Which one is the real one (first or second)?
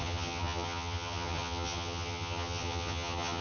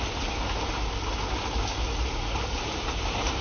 second